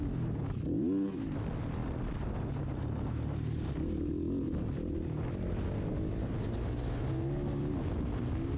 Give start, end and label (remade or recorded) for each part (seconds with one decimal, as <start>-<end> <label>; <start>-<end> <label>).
0.0-8.6 recorded